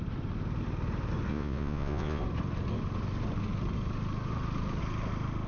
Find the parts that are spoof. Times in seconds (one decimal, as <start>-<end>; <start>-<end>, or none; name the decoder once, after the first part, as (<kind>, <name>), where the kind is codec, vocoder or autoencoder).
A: 1.3-2.2 (vocoder, Vocos)